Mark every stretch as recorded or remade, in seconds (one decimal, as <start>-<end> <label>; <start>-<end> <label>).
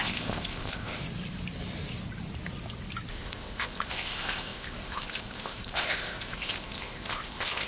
0.0-1.0 remade; 1.0-3.1 recorded; 3.1-7.7 remade